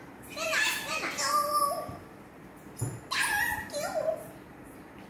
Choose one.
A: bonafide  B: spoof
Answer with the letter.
A